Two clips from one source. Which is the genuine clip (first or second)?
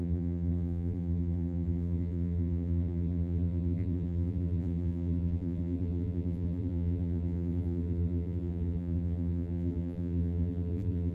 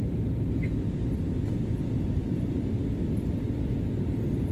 second